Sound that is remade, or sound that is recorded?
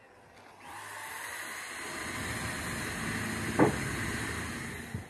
recorded